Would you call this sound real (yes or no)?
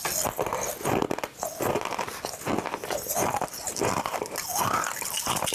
yes